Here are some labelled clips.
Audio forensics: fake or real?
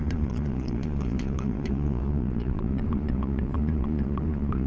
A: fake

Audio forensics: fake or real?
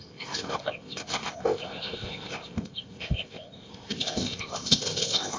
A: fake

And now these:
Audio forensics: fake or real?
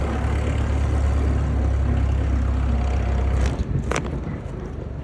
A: real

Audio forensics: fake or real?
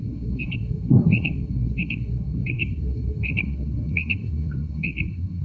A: fake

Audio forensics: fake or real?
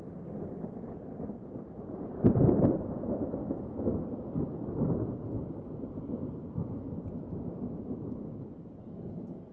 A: real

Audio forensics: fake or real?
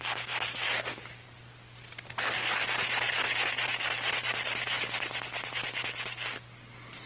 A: real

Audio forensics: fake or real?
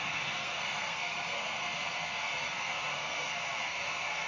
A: fake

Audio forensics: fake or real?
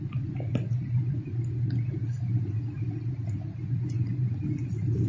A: real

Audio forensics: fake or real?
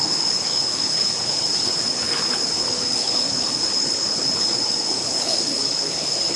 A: fake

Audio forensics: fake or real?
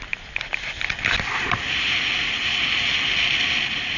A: real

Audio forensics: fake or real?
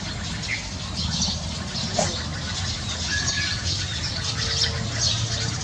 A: real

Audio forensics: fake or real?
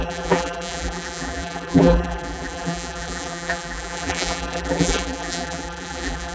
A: fake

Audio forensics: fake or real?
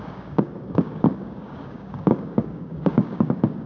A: fake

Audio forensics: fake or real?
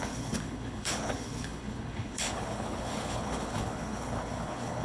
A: fake